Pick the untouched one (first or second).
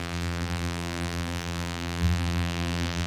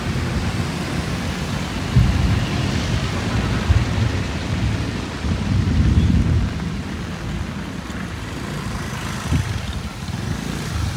second